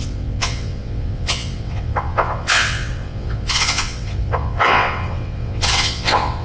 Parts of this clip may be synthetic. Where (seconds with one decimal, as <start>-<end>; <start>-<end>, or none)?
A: 0.0-6.4